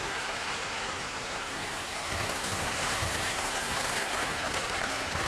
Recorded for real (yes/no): no